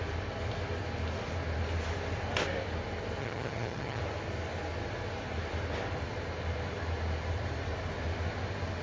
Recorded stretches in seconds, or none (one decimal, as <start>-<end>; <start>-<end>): 0.0-3.2; 4.0-8.8